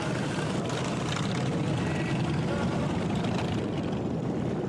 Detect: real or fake real